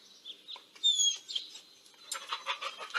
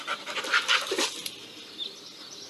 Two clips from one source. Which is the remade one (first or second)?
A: second